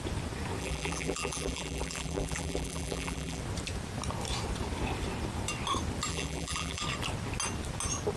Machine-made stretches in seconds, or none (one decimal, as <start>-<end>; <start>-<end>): 0.6-3.4; 6.1-6.8